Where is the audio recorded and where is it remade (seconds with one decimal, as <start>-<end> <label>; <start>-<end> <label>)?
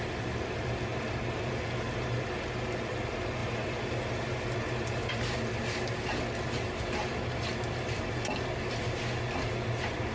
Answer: 0.0-10.1 recorded